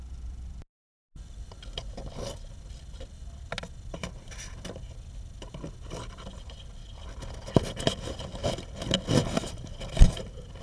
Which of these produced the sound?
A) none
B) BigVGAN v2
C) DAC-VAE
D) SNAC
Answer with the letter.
A